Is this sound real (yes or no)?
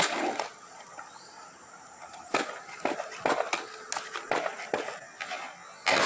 yes